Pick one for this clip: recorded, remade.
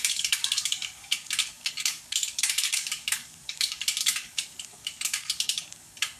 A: remade